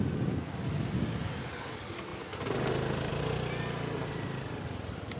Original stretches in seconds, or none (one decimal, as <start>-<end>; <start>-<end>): 0.0-5.2